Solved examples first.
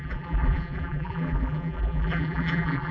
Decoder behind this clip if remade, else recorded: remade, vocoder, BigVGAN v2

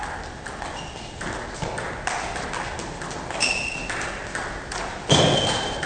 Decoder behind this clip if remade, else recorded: recorded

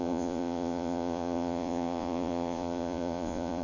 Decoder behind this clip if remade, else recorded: remade, vocoder, Vocos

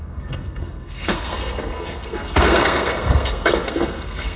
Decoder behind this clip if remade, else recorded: remade, codec, SNAC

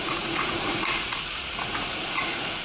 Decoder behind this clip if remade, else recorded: remade, vocoder, Vocos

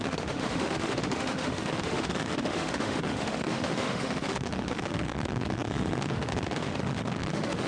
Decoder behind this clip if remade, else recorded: remade, autoencoder, DAC-VAE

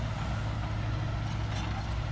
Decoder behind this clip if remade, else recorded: recorded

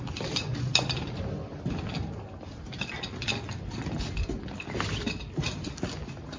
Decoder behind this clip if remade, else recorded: recorded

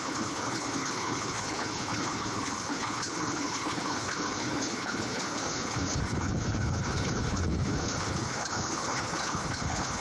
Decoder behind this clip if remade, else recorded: remade, codec, HILCodec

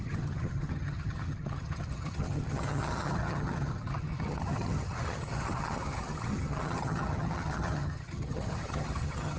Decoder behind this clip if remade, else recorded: remade, vocoder, HiFi-GAN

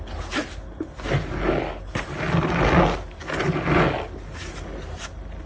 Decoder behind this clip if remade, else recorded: recorded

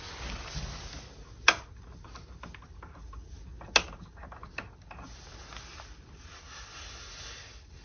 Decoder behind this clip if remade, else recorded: recorded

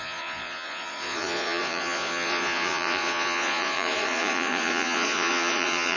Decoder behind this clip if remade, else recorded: remade, vocoder, Vocos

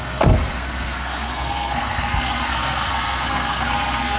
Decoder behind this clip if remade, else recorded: remade, codec, SNAC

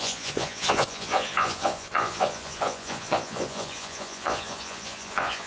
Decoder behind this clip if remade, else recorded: remade, vocoder, Vocos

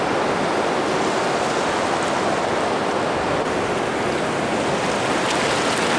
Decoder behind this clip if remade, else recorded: recorded